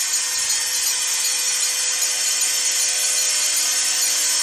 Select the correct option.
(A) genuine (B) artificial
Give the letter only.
A